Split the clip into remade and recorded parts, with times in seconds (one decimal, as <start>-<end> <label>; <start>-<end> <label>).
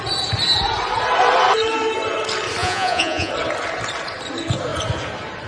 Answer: 0.0-2.6 recorded; 2.6-3.3 remade; 3.3-5.5 recorded